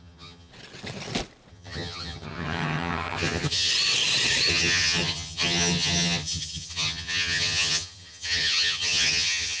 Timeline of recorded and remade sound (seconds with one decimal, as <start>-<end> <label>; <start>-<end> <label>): 0.0-0.5 remade; 0.5-1.5 recorded; 1.5-3.7 remade; 3.7-4.5 recorded; 4.5-9.6 remade